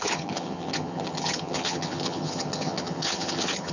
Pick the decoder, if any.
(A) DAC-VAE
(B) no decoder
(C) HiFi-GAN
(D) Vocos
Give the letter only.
C